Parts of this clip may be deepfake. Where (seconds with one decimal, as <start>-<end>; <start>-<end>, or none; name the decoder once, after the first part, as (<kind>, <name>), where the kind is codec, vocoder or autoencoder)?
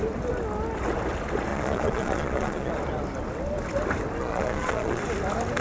1.5-2.7 (vocoder, Vocos); 4.2-5.0